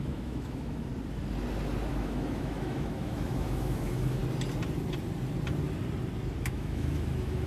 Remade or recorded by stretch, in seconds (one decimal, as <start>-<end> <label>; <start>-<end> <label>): 0.0-0.9 remade; 0.9-1.9 recorded; 1.9-4.2 remade; 4.2-6.4 recorded; 6.4-7.5 remade